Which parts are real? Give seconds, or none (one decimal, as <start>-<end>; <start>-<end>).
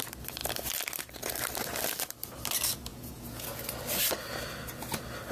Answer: 0.0-2.9; 3.6-5.3